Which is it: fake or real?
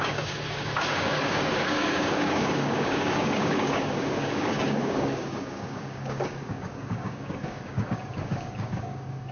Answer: fake